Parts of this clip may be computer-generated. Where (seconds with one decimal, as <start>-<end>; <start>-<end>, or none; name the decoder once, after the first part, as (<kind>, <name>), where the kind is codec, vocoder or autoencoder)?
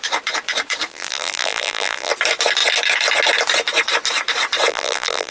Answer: 0.9-2.1 (vocoder, BigVGAN v2); 4.7-5.3